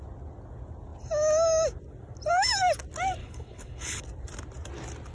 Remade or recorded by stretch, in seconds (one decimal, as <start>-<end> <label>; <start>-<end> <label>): 0.0-3.2 recorded; 3.2-4.0 remade; 4.0-5.1 recorded

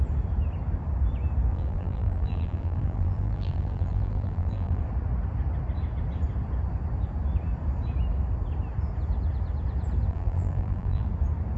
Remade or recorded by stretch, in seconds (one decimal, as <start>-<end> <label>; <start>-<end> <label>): 0.0-1.5 recorded; 1.5-4.8 remade; 4.8-10.1 recorded; 10.1-11.1 remade; 11.1-11.6 recorded

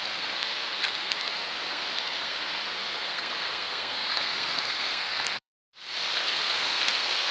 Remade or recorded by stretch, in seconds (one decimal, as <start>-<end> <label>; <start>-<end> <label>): 0.0-7.3 remade